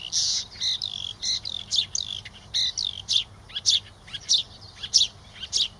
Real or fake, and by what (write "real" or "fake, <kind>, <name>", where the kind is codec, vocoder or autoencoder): real